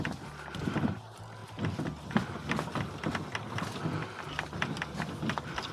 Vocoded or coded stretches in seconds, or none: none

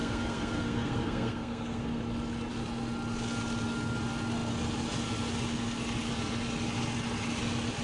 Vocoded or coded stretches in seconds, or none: 0.0-2.0 (codec, SNAC)

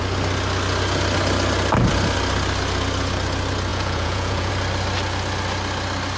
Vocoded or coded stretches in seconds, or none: 3.7-4.5 (vocoder, Vocos)

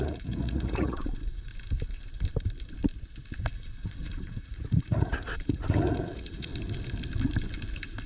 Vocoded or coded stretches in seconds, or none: 0.0-1.5 (vocoder, Vocos); 3.4-6.5

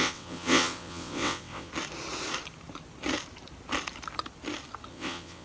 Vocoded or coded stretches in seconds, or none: 0.0-1.7 (vocoder, WaveNeXt); 4.9-5.4

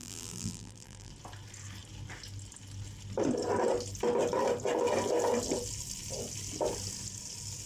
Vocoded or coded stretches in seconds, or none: 0.0-1.1 (vocoder, BigVGAN v2)